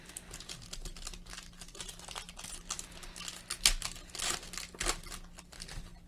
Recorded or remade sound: recorded